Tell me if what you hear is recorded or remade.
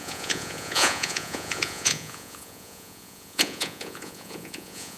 remade